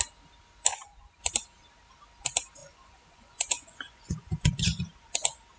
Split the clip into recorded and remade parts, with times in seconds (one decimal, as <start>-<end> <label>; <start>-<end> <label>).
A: 0.0-0.7 recorded; 0.7-1.2 remade; 1.2-2.6 recorded; 2.6-4.9 remade; 4.9-5.6 recorded